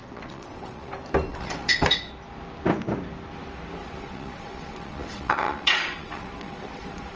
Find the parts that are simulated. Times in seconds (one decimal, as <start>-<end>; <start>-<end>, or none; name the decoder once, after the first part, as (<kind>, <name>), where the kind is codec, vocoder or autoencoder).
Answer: 0.0-0.9 (vocoder, WaveNeXt); 1.3-2.1; 3.8-7.2